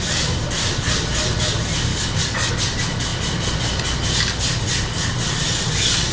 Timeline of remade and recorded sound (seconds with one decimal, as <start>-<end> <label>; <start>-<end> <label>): 0.0-1.9 recorded; 1.9-2.5 remade; 2.5-6.1 recorded